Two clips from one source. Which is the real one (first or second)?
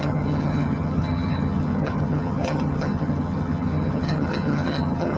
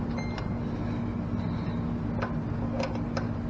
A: second